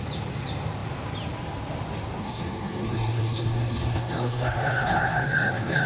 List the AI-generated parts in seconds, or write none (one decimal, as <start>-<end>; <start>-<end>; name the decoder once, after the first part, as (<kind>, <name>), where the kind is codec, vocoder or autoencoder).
2.2-5.9 (codec, SNAC)

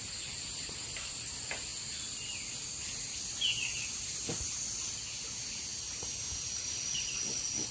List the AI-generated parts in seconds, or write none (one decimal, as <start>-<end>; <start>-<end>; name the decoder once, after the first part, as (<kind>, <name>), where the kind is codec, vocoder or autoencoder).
none

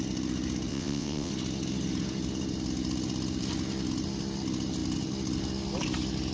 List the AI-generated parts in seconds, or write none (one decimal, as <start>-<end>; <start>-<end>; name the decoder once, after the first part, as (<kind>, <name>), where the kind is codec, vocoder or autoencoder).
0.7-1.3 (vocoder, WaveNeXt)

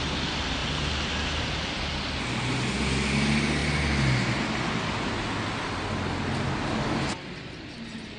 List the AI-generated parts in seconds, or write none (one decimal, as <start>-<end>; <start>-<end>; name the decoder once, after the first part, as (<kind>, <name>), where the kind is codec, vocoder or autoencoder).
none

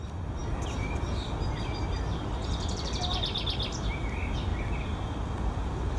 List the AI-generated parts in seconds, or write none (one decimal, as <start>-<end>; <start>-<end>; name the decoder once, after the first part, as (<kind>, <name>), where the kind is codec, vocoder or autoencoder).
4.5-6.0 (vocoder, BigVGAN v2)

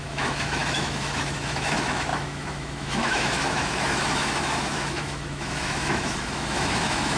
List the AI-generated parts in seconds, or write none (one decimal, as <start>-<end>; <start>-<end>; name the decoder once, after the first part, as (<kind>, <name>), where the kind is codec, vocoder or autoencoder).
0.0-7.2 (autoencoder, DAC-VAE)